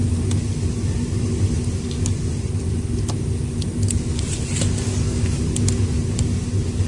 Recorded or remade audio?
recorded